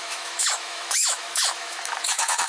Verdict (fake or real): fake